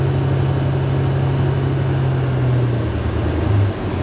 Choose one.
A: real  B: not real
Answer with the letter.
A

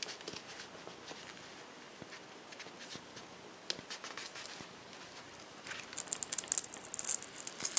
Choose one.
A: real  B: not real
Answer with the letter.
A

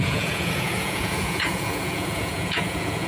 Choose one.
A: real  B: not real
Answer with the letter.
B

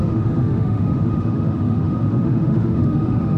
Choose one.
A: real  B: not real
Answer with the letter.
B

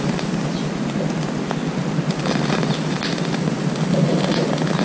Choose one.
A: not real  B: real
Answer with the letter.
B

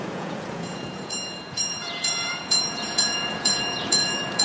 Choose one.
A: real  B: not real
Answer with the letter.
B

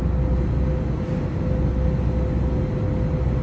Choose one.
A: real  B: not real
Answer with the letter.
A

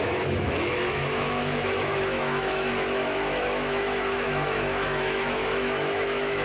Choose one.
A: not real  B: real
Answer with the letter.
A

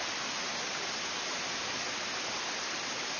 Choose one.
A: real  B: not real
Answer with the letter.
A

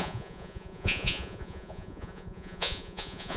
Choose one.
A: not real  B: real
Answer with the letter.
A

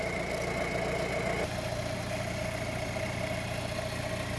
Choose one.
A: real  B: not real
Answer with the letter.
A